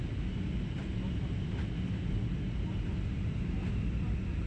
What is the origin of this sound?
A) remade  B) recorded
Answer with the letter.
B